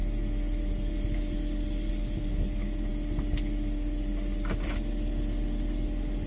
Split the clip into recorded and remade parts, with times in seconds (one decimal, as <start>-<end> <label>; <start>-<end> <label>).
0.0-6.3 recorded